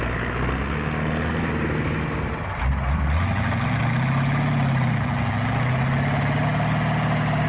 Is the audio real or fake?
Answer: real